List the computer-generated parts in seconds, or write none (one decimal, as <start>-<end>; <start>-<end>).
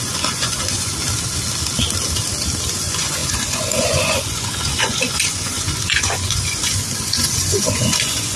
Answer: 0.0-0.9; 2.7-8.4